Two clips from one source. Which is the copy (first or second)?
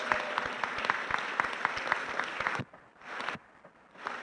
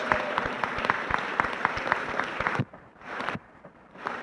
second